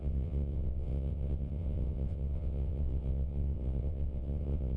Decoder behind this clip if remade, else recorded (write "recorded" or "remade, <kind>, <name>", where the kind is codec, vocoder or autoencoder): remade, vocoder, WaveNeXt